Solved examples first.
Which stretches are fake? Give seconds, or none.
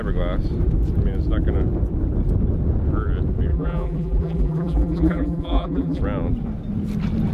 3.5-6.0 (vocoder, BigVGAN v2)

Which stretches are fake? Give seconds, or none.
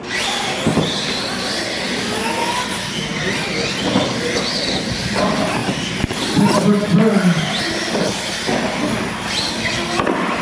none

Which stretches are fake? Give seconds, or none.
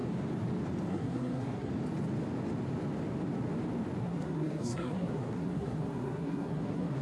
0.9-1.7 (codec, SNAC); 4.0-7.0